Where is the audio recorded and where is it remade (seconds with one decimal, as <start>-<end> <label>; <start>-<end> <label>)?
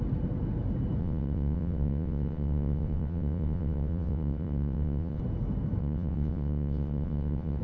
0.0-1.0 recorded; 1.0-5.2 remade; 5.2-5.8 recorded; 5.8-7.6 remade